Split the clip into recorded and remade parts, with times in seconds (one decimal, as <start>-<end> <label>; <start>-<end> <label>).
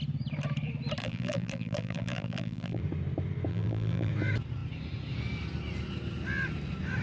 0.0-1.0 recorded; 1.0-2.8 remade; 2.8-3.5 recorded; 3.5-4.1 remade; 4.1-7.0 recorded